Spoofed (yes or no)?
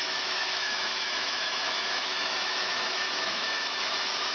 yes